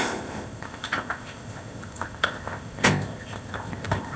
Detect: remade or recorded remade